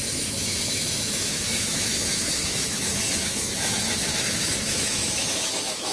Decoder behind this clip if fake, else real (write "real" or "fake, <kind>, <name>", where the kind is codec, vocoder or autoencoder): fake, autoencoder, DAC-VAE